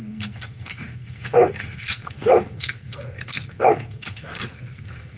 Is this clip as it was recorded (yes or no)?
no